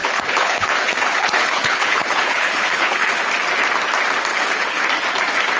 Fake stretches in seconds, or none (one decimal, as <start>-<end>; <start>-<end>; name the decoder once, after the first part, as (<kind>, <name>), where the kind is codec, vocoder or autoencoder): 0.0-3.1 (codec, HILCodec); 4.3-4.8

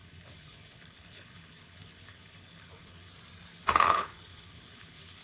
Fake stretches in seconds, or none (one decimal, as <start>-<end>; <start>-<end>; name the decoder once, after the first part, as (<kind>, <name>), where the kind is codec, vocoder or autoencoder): 0.0-3.1 (codec, HILCodec); 3.5-5.2